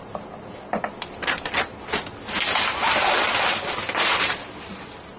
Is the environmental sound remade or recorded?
recorded